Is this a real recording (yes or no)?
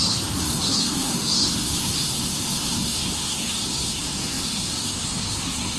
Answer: no